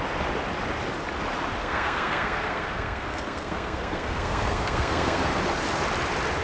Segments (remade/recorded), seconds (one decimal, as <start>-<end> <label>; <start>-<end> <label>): 0.0-1.6 recorded; 1.6-5.4 remade; 5.4-6.4 recorded